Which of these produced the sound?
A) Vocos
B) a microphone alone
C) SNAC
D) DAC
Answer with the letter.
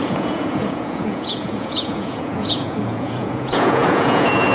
A